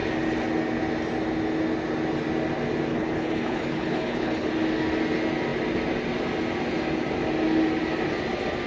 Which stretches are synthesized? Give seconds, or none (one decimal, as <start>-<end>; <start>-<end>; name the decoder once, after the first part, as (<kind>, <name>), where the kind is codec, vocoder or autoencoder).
2.9-4.5 (codec, HILCodec)